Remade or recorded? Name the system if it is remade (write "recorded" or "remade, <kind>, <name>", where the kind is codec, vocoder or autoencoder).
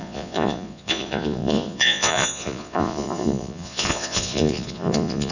remade, vocoder, Vocos